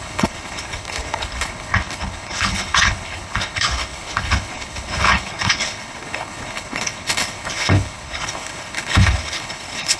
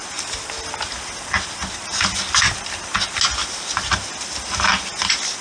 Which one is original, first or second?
second